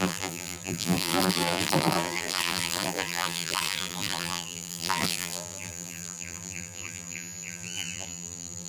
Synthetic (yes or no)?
yes